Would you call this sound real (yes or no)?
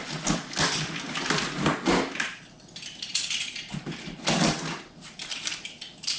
yes